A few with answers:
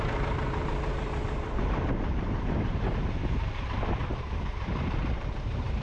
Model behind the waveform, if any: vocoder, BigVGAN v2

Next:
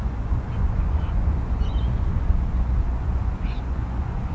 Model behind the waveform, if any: vocoder, Vocos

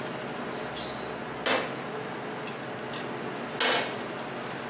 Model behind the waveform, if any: none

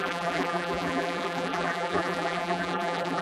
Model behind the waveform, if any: vocoder, BigVGAN v2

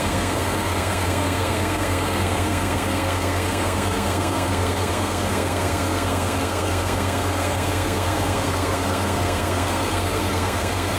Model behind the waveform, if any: codec, SNAC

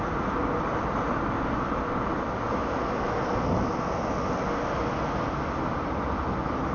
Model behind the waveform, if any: none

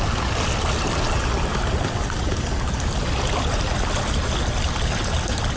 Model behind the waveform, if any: none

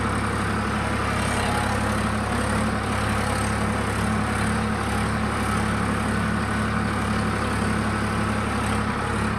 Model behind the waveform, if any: none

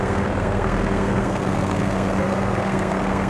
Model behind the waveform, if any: codec, SNAC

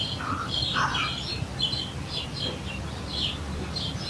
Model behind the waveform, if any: none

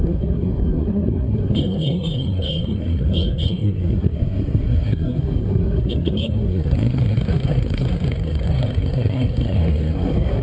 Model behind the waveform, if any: codec, SNAC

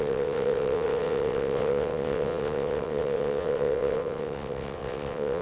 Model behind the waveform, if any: vocoder, WaveNeXt